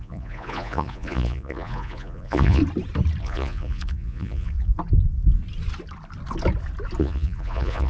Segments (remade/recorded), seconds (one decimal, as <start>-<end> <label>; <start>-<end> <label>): 0.0-2.6 remade; 2.6-3.2 recorded; 3.2-4.7 remade; 4.7-7.0 recorded; 7.0-7.9 remade